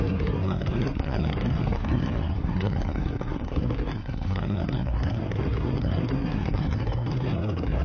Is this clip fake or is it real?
fake